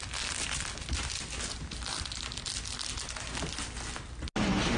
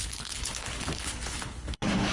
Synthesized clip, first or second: second